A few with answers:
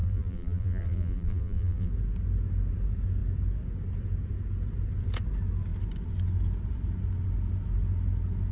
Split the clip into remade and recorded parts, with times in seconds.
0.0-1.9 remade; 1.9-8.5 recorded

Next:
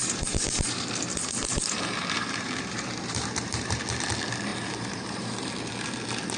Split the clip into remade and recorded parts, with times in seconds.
0.0-3.8 remade; 3.8-4.5 recorded; 4.5-5.4 remade; 5.4-6.4 recorded

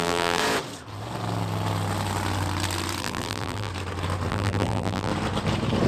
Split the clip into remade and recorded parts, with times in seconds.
0.0-0.4 remade; 0.4-3.0 recorded; 3.0-3.7 remade; 3.7-4.3 recorded; 4.3-5.1 remade; 5.1-5.9 recorded

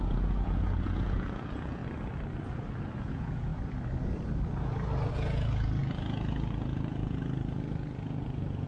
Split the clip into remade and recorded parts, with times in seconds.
0.0-1.8 remade; 1.8-3.0 recorded; 3.0-3.5 remade; 3.5-5.1 recorded; 5.1-8.7 remade

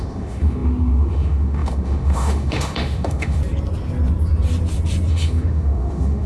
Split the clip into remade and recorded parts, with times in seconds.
0.0-3.4 remade; 3.4-5.1 recorded; 5.1-6.3 remade

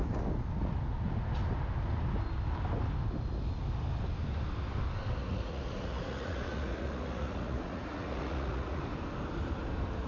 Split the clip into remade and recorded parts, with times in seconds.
0.0-5.2 recorded; 5.2-8.8 remade; 8.8-10.1 recorded

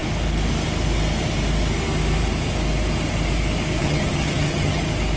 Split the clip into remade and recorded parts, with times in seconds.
0.0-3.8 recorded; 3.8-4.8 remade; 4.8-5.2 recorded

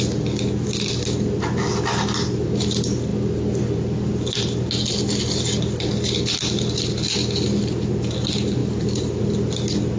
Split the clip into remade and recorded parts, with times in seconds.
0.0-8.6 recorded; 8.6-9.2 remade; 9.2-10.0 recorded